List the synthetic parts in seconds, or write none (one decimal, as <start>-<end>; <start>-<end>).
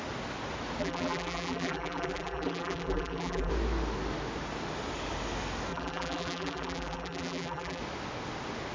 0.8-3.5; 5.7-7.8